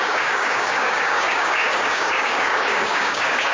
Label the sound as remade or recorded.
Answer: remade